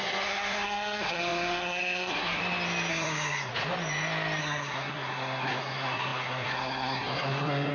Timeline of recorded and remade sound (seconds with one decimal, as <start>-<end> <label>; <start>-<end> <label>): 0.0-2.4 remade; 2.4-2.9 recorded; 2.9-3.5 remade; 3.5-4.4 recorded; 4.4-7.7 remade